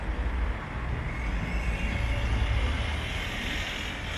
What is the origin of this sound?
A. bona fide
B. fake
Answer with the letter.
A